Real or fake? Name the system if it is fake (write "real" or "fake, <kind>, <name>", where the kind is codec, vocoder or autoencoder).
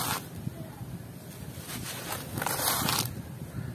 real